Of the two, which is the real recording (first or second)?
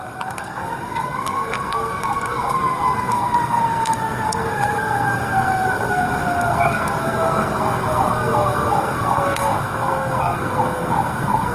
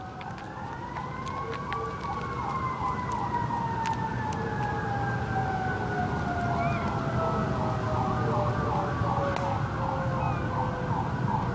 second